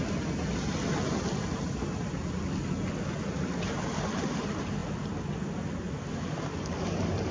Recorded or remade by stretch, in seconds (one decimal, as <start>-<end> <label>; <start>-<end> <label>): 0.0-7.3 recorded